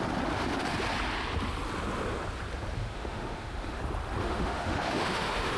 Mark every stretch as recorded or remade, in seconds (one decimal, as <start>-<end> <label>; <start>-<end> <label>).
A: 0.0-2.8 recorded; 2.8-3.8 remade; 3.8-4.2 recorded; 4.2-5.6 remade